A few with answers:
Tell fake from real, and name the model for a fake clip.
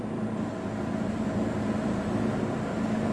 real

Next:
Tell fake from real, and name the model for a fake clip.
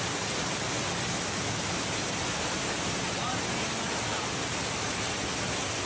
real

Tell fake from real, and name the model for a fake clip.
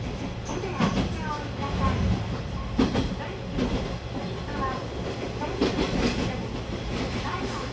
real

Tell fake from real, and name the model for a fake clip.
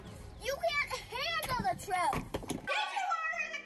fake, vocoder, BigVGAN v2